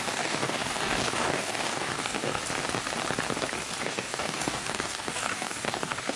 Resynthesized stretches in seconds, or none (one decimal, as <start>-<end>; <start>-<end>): 0.0-2.4; 3.8-6.2